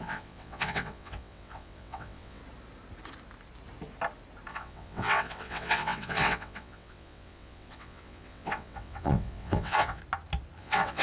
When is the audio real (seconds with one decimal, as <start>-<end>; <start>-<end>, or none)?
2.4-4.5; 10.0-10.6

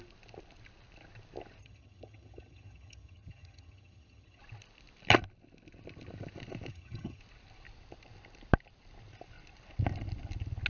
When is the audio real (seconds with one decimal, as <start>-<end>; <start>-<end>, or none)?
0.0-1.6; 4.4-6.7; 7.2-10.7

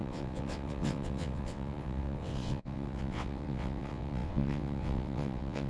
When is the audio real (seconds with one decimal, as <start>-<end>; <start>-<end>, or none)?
none

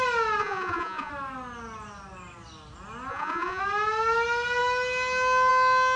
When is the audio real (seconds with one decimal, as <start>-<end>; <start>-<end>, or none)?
0.0-0.4; 1.1-3.1; 3.6-6.0

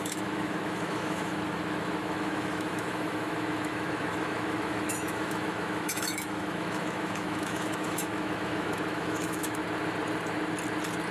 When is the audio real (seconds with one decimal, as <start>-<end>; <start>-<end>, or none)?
9.6-11.1